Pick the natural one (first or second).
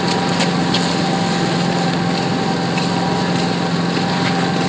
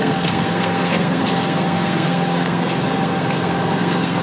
first